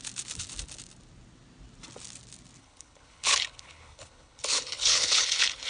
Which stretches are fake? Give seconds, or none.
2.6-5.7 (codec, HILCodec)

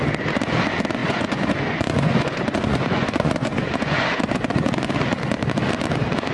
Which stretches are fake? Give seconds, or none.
1.0-4.7 (vocoder, Vocos)

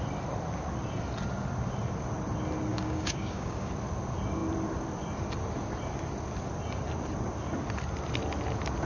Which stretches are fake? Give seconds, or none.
2.7-3.7 (codec, DAC)